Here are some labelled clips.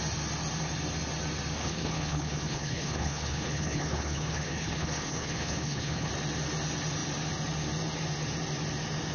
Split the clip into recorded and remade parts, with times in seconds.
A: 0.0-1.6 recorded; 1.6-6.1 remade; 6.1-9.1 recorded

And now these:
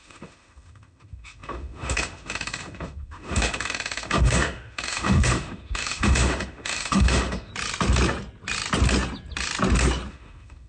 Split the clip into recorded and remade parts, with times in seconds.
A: 0.0-7.5 remade; 7.5-10.1 recorded; 10.1-10.7 remade

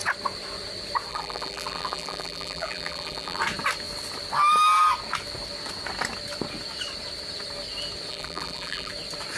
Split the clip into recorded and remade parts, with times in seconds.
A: 0.0-1.1 recorded; 1.1-3.4 remade; 3.4-8.1 recorded; 8.1-8.9 remade; 8.9-9.4 recorded